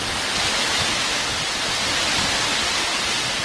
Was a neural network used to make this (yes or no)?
no